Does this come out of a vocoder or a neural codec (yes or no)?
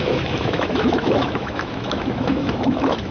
yes